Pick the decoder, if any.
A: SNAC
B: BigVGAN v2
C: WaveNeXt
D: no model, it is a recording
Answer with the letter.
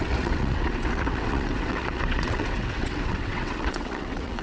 C